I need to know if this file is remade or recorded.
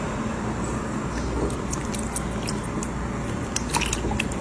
recorded